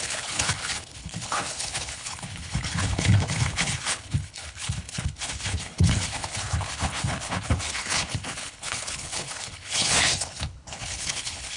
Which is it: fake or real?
fake